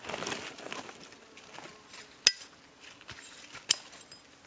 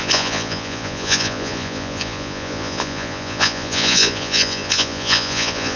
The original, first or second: first